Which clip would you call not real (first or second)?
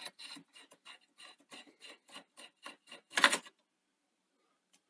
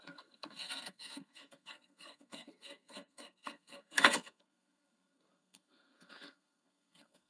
second